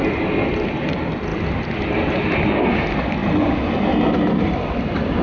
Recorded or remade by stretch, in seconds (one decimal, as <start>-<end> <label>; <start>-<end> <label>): 0.0-5.2 recorded